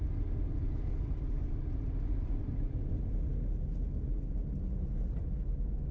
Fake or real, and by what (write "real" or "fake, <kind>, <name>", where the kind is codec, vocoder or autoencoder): real